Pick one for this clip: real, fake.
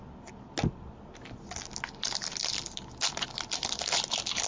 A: real